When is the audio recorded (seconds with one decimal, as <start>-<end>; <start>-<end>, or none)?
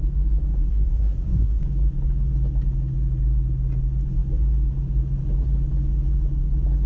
0.0-0.7; 1.6-6.9